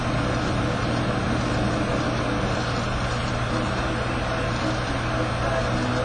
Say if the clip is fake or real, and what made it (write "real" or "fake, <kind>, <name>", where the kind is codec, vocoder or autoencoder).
real